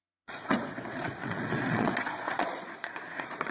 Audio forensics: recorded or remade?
remade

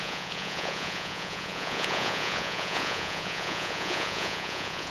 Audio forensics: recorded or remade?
remade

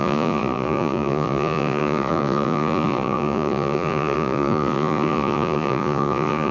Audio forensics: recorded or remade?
remade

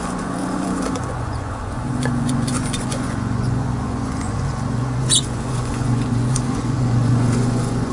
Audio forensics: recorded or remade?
remade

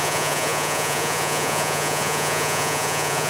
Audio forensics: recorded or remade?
remade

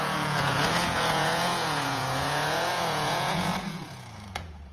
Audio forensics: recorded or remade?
remade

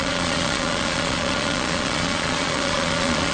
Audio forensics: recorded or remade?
remade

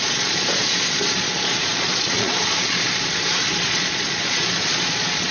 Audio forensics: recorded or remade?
remade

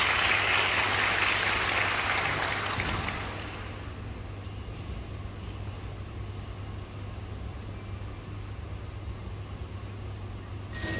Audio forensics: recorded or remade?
recorded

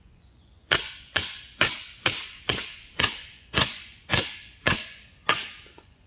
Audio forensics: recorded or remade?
remade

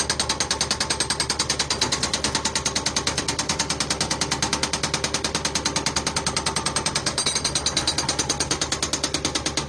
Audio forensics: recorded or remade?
recorded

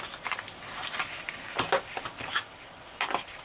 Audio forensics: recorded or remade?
recorded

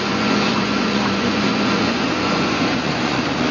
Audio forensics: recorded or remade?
remade